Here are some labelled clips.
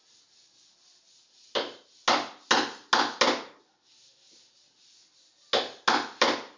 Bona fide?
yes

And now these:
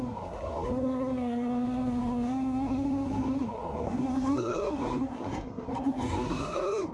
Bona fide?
no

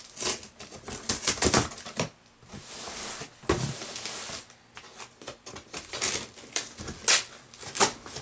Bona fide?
yes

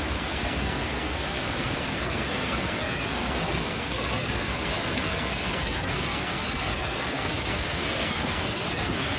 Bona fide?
no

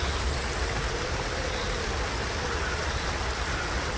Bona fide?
yes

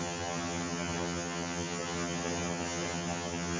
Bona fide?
no